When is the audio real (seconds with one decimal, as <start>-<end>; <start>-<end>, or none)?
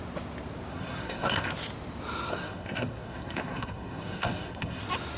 0.0-0.7; 1.5-2.3; 4.8-5.2